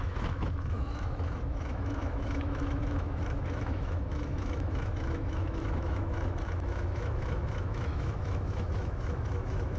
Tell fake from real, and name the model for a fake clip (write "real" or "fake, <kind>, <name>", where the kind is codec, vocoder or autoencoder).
fake, autoencoder, DAC-VAE